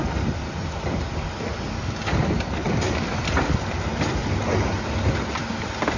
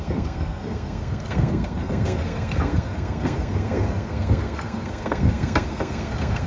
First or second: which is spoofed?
second